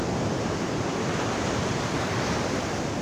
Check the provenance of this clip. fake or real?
fake